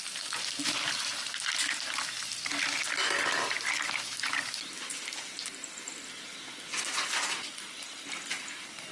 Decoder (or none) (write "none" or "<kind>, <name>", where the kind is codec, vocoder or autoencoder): none